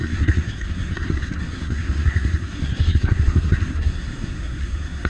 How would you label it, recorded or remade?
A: remade